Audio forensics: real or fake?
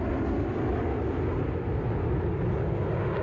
real